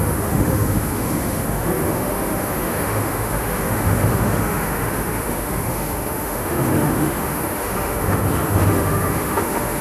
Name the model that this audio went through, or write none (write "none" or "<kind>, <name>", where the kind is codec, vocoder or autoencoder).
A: autoencoder, DAC-VAE